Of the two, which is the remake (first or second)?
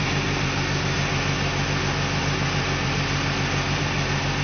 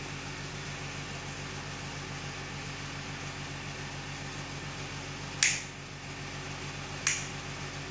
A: first